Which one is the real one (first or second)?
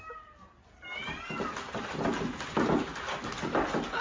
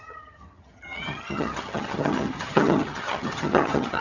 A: first